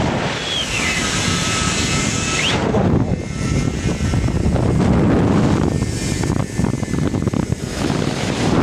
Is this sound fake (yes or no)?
yes